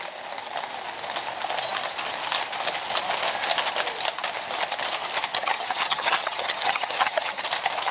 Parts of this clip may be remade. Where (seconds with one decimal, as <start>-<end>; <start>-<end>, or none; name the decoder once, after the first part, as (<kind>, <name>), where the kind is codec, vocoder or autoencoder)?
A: 5.3-7.5 (vocoder, HiFi-GAN)